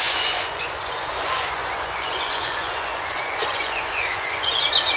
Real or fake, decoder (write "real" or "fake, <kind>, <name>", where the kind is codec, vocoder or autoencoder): fake, vocoder, Vocos